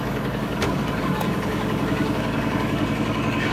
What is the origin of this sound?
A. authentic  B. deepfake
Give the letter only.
B